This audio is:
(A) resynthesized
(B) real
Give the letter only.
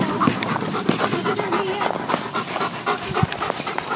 B